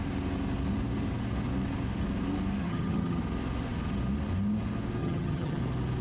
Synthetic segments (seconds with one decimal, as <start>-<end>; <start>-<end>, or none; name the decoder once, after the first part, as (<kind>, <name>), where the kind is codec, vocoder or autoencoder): 2.6-3.2 (vocoder, HiFi-GAN); 5.0-5.6